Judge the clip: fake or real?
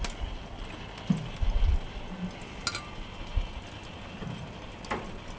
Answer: real